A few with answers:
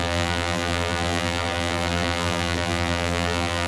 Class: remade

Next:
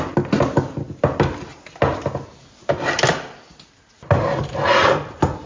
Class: recorded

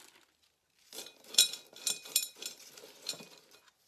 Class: recorded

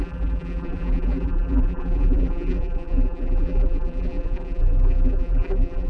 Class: remade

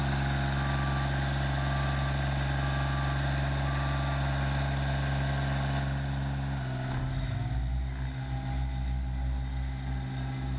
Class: recorded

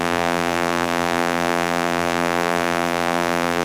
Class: remade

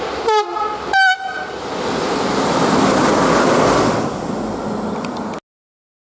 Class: recorded